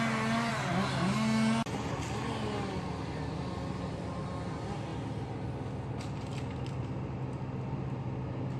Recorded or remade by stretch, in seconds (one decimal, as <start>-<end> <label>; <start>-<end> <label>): 0.0-8.6 recorded